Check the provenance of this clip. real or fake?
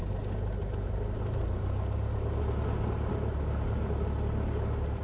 real